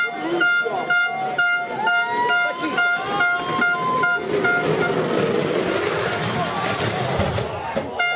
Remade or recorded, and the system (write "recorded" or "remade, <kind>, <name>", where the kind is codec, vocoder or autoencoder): recorded